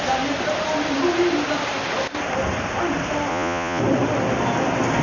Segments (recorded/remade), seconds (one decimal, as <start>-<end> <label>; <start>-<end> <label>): 0.0-3.3 recorded; 3.3-3.8 remade; 3.8-5.0 recorded